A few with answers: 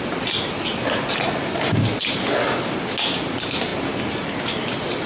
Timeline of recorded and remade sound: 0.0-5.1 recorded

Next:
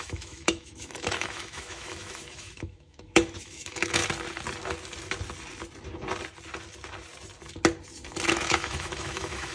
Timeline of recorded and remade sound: 0.0-4.0 remade; 4.0-8.3 recorded; 8.3-9.5 remade

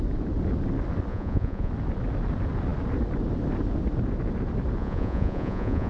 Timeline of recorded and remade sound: 0.0-1.1 recorded; 1.1-1.7 remade; 1.7-4.8 recorded; 4.8-5.9 remade

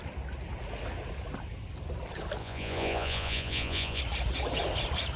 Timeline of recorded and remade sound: 0.0-2.4 recorded; 2.4-4.0 remade; 4.0-5.2 recorded

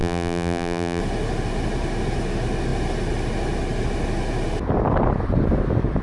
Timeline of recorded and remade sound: 0.0-1.0 remade; 1.0-6.0 recorded